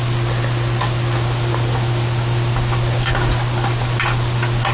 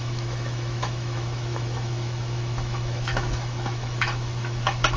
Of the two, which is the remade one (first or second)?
second